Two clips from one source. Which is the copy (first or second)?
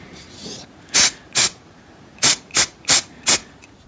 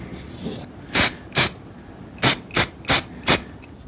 first